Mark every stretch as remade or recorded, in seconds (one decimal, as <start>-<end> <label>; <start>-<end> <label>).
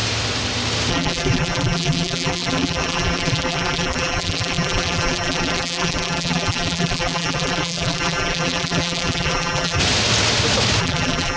0.0-0.9 recorded; 0.9-9.8 remade; 9.8-10.8 recorded; 10.8-11.4 remade